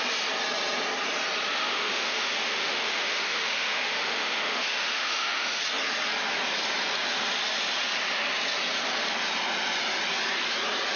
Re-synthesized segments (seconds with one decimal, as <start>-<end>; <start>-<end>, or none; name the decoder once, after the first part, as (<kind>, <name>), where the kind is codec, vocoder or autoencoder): 1.5-5.6 (autoencoder, DAC-VAE)

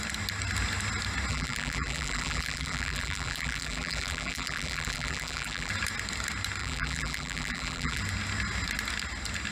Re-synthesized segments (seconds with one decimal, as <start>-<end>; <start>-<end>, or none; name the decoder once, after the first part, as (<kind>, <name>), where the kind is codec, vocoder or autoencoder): 1.3-5.7 (vocoder, BigVGAN v2); 6.6-8.0

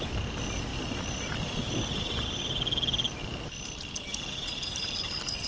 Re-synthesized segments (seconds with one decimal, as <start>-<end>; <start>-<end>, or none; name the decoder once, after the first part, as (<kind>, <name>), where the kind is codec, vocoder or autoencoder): none